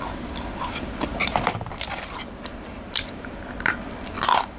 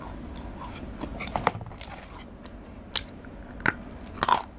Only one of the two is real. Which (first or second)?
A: second